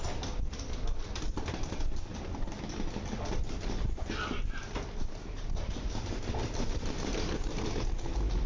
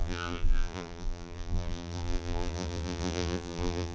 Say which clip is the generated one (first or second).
second